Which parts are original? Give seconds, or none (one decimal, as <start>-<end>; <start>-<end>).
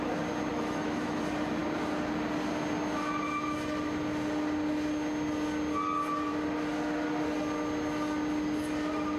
0.0-0.5; 1.2-9.2